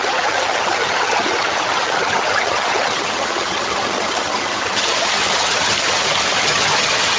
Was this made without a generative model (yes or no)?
no